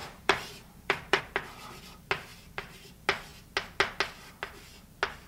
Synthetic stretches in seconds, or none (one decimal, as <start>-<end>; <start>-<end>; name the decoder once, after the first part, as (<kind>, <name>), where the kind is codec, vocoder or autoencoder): 0.0-1.2 (vocoder, BigVGAN v2); 2.3-2.9